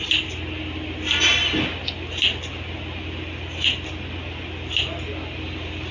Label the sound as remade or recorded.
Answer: recorded